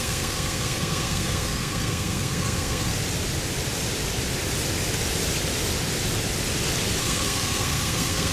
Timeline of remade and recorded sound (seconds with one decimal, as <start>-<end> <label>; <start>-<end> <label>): 0.0-2.9 remade; 2.9-7.0 recorded; 7.0-8.3 remade